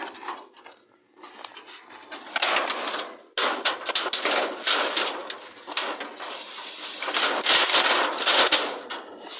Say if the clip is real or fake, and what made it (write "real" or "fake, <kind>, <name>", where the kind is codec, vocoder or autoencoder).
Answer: real